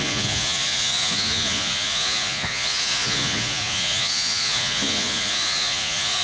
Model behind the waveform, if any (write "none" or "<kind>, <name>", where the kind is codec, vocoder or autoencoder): vocoder, Vocos